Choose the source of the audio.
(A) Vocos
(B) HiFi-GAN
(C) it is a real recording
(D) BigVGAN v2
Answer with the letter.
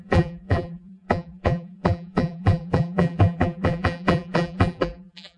D